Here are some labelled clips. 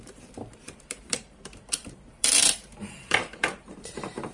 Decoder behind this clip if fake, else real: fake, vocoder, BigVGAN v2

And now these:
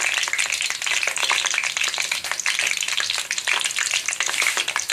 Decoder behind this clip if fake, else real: real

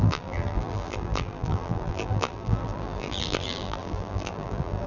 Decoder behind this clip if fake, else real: fake, vocoder, BigVGAN v2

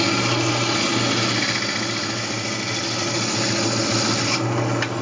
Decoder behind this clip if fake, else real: real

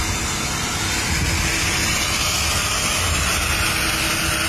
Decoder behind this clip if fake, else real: real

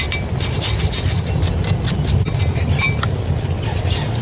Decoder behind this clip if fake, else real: real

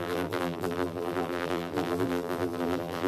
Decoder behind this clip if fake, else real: fake, vocoder, BigVGAN v2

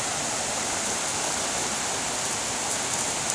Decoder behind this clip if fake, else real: real